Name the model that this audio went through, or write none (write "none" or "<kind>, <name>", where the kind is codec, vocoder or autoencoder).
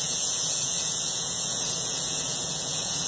vocoder, Vocos